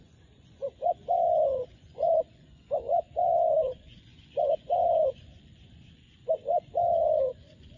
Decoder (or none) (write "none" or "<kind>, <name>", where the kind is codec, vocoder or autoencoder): vocoder, Vocos